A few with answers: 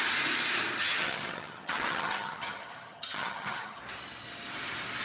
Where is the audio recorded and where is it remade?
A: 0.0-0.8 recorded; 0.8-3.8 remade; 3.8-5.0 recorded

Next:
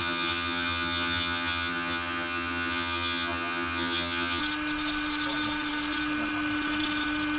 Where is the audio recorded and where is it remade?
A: 0.0-4.4 remade; 4.4-7.4 recorded

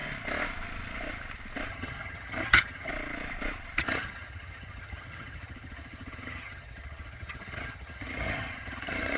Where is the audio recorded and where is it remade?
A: 0.0-1.7 recorded; 1.7-2.9 remade; 2.9-3.8 recorded; 3.8-9.2 remade

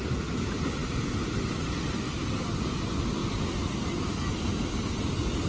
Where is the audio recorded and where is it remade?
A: 0.0-5.5 recorded

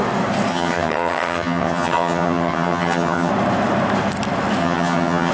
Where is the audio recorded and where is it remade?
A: 0.0-0.5 recorded; 0.5-3.3 remade; 3.3-4.6 recorded; 4.6-5.3 remade

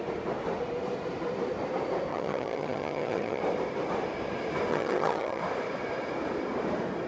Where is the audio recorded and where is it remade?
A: 0.0-2.1 recorded; 2.1-3.4 remade; 3.4-4.7 recorded; 4.7-5.4 remade; 5.4-7.1 recorded

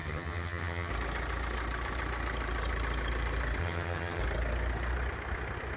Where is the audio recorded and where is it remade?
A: 0.0-0.9 remade; 0.9-3.6 recorded; 3.6-4.2 remade; 4.2-5.8 recorded